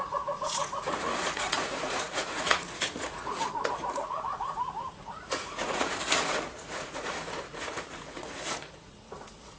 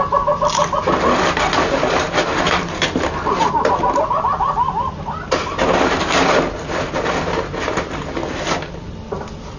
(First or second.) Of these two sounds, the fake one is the first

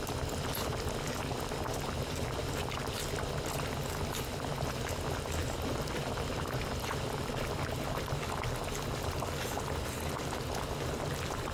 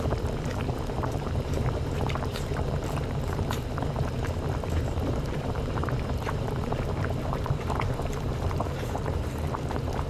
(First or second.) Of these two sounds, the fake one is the second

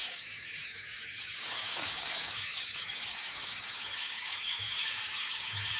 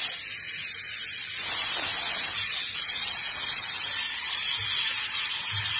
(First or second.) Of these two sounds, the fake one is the first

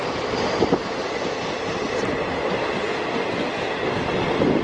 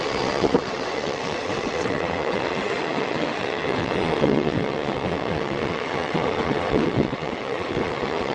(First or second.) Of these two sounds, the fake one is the second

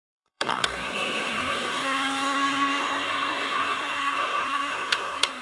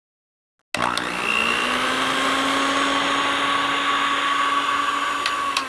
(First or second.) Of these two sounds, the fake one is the first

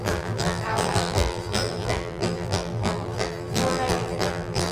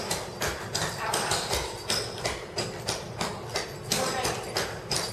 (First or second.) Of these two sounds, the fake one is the first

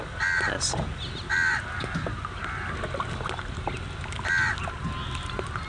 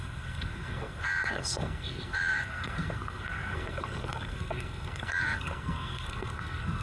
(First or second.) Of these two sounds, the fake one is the second